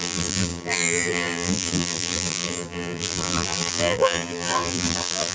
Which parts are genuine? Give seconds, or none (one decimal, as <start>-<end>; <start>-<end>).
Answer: none